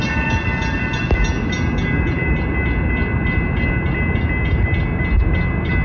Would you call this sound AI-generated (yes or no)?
no